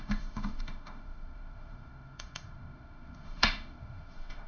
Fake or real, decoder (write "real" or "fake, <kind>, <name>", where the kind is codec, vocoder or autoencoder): fake, autoencoder, DAC-VAE